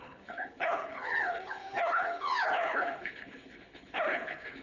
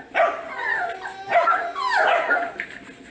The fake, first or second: first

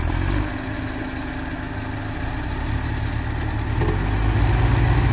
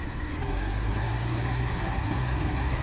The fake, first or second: second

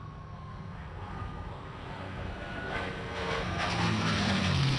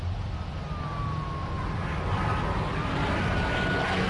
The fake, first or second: first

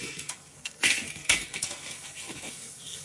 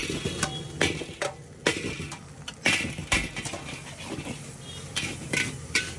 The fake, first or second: first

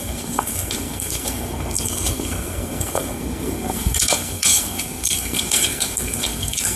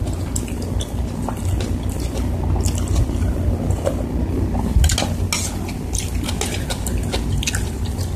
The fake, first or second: first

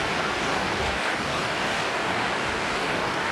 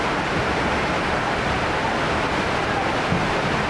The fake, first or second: first